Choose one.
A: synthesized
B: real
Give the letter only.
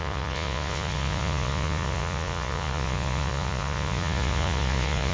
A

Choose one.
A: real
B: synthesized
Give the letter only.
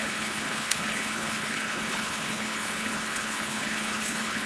B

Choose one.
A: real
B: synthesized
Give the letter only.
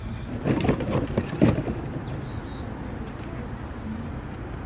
A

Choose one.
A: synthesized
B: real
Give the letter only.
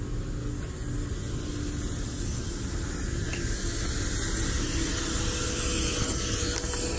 B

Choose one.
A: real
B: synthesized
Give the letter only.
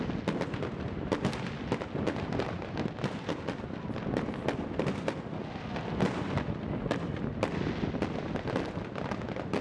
A